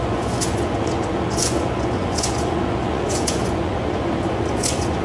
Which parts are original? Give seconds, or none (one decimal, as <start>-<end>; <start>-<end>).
none